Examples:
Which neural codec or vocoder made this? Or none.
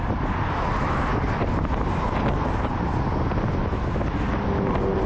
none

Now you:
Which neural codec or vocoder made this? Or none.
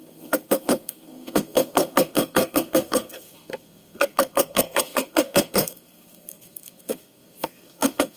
codec, SNAC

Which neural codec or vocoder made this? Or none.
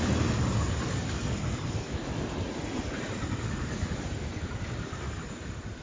none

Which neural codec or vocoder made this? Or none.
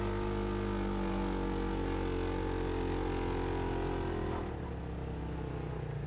none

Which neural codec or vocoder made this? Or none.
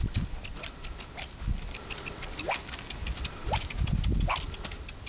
none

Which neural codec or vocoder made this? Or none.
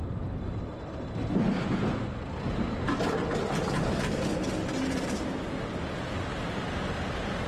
none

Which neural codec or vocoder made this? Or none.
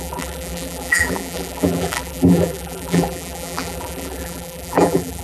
vocoder, BigVGAN v2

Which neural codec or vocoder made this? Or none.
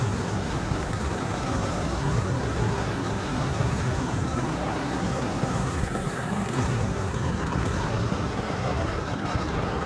codec, SNAC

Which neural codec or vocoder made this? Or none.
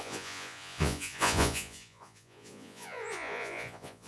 vocoder, Vocos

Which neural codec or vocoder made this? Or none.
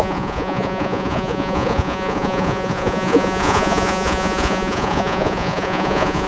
vocoder, Vocos